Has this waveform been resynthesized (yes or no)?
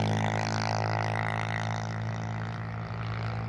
no